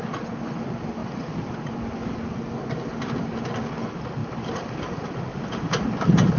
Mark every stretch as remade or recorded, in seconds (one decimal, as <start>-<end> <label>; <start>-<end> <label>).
0.0-6.4 recorded